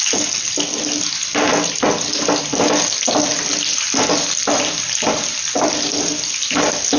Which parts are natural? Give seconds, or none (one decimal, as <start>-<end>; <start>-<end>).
0.0-3.7; 5.7-7.0